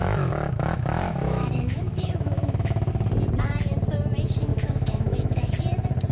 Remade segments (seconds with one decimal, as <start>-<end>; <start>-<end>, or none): 0.0-2.9; 4.5-5.5